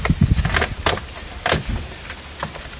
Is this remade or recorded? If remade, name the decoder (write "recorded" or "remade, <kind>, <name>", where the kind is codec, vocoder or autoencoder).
recorded